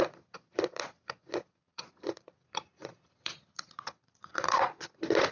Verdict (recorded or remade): remade